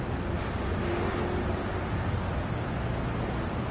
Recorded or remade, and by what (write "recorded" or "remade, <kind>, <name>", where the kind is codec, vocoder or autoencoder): recorded